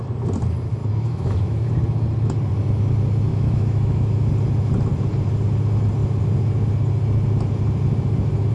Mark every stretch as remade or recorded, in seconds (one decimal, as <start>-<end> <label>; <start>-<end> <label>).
0.0-0.8 recorded; 0.8-1.7 remade; 1.7-3.3 recorded; 3.3-4.3 remade; 4.3-8.5 recorded